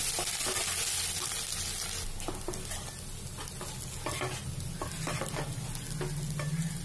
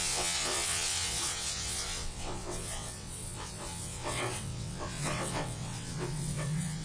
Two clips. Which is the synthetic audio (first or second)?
second